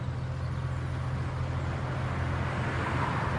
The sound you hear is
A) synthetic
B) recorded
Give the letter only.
B